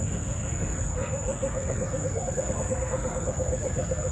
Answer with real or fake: fake